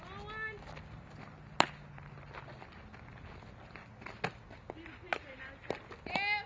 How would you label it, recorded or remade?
recorded